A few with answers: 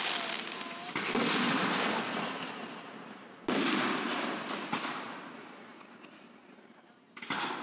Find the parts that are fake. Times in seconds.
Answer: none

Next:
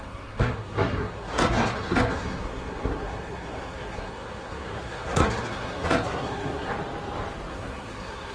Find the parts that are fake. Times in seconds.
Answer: 0.0-6.7; 7.5-8.3

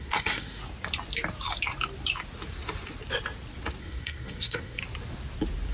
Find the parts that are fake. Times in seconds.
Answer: 0.0-0.6; 3.8-4.8

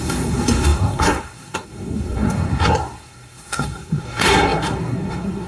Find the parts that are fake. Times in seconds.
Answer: 0.0-5.5

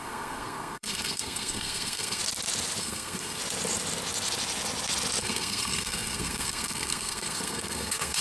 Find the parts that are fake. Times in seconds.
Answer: 0.0-2.2; 2.8-3.4; 5.2-8.2

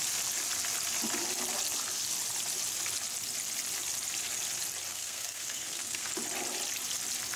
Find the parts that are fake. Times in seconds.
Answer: 4.9-6.1